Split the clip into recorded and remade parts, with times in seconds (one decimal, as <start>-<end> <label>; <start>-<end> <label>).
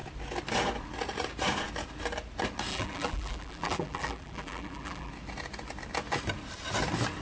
0.0-2.7 recorded; 2.7-5.1 remade; 5.1-7.2 recorded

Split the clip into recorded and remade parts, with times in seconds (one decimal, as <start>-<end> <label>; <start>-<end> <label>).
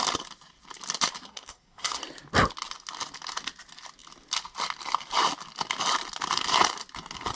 0.0-1.2 recorded; 1.2-2.0 remade; 2.0-7.4 recorded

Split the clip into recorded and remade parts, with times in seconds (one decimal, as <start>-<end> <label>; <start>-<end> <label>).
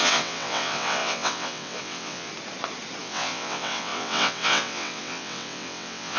0.0-2.3 remade; 2.3-3.0 recorded; 3.0-6.2 remade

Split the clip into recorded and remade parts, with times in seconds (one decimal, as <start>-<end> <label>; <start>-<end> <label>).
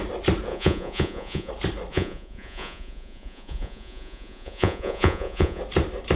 0.0-0.5 recorded; 0.5-1.5 remade; 1.5-1.9 recorded; 1.9-5.6 remade; 5.6-6.2 recorded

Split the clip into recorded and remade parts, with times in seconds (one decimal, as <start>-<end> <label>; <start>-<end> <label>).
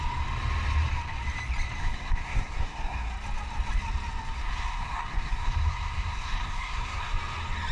0.0-1.8 recorded; 1.8-3.1 remade; 3.1-4.4 recorded; 4.4-7.1 remade; 7.1-7.7 recorded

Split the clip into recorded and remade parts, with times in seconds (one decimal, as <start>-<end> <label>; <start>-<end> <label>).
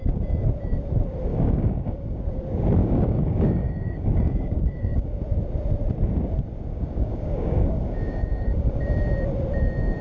0.0-1.3 recorded; 1.3-2.2 remade; 2.2-2.8 recorded; 2.8-5.2 remade; 5.2-6.7 recorded; 6.7-9.0 remade; 9.0-10.0 recorded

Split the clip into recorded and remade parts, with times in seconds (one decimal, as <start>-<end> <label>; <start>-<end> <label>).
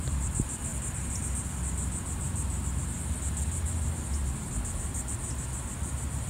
0.0-0.7 remade; 0.7-4.5 recorded; 4.5-6.3 remade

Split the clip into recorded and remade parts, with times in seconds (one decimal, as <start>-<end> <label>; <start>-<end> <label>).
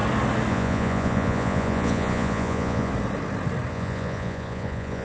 0.0-0.5 recorded; 0.5-2.9 remade; 2.9-3.7 recorded; 3.7-5.0 remade